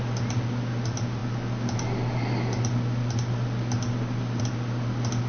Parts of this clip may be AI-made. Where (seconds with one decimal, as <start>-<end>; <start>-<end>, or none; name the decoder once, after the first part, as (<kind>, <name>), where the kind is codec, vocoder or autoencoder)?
none